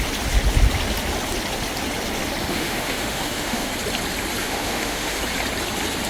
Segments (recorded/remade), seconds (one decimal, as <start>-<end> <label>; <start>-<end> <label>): 0.0-2.5 recorded; 2.5-3.7 remade; 3.7-4.4 recorded; 4.4-5.2 remade; 5.2-6.1 recorded